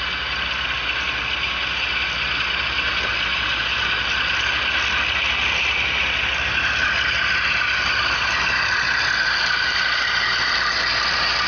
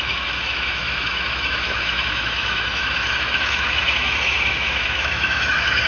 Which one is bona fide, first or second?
first